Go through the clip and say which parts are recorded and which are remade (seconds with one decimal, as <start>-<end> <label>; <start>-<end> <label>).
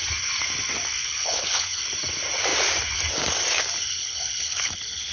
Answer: 0.0-1.0 recorded; 1.0-1.8 remade; 1.8-4.0 recorded; 4.0-5.1 remade